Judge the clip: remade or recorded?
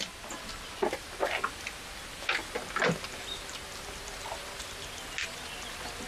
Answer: recorded